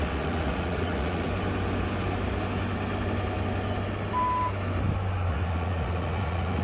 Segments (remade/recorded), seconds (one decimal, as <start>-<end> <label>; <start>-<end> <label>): 0.0-1.3 remade; 1.3-5.3 recorded; 5.3-6.6 remade